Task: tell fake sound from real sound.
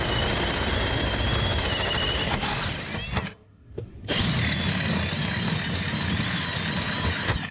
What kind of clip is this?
real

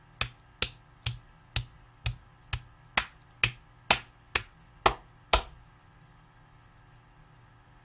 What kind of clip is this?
real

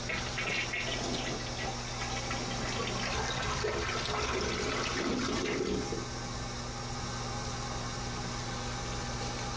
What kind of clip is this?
real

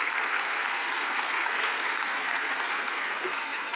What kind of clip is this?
fake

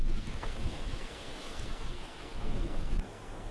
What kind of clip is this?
fake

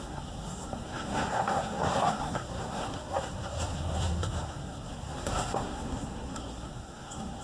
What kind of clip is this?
fake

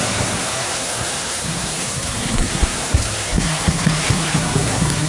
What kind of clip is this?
fake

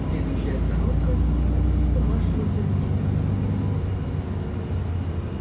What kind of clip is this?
real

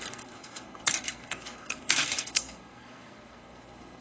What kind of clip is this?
fake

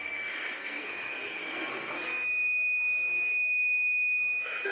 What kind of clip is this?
fake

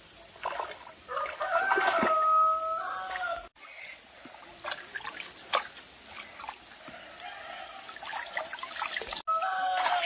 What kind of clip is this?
real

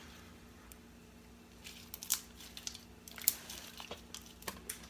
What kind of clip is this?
real